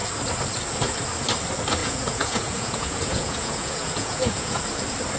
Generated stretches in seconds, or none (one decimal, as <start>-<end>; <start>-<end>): 1.8-4.6